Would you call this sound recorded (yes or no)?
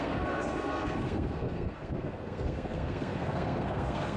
no